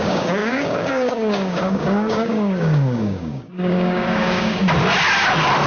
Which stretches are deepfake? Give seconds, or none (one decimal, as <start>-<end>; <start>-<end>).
0.0-4.6